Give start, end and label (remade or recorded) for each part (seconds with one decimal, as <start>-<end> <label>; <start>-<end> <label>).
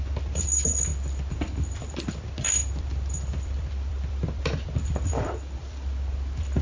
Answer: 0.0-6.6 remade